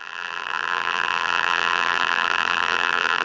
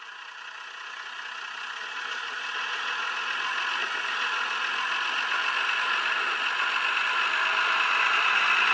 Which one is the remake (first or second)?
first